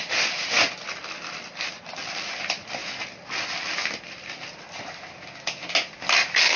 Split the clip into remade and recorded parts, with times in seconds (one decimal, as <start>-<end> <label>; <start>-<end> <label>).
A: 0.0-1.0 recorded; 1.0-2.3 remade; 2.3-6.6 recorded